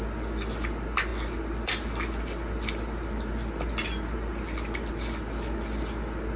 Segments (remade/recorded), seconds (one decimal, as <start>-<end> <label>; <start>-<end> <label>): 0.0-6.4 recorded